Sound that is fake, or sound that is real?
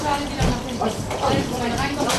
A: fake